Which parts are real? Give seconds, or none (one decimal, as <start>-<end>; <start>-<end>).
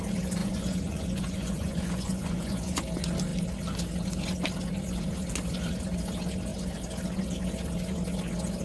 0.0-0.4; 2.8-8.6